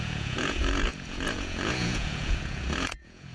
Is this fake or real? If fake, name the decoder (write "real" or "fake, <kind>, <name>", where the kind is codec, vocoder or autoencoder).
fake, vocoder, Vocos